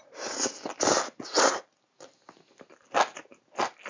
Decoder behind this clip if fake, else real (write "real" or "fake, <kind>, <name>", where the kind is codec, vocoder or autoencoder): real